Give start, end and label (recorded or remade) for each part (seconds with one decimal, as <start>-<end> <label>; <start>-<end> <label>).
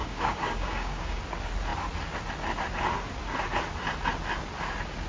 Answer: 0.0-1.2 remade; 1.2-5.1 recorded